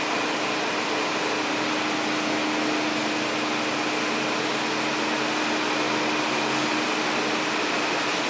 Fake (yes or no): no